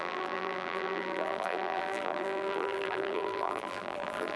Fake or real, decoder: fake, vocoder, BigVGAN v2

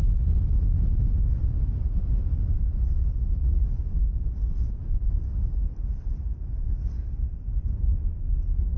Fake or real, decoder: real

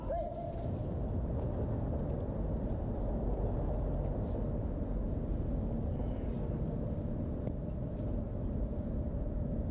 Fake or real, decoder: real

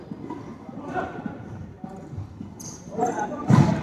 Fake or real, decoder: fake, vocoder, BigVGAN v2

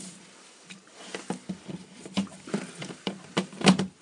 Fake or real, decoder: fake, vocoder, BigVGAN v2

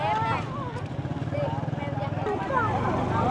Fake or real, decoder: real